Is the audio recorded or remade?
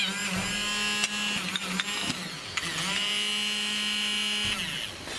recorded